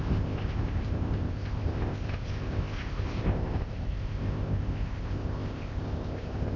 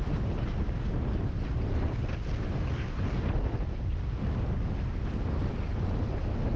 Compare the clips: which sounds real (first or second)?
second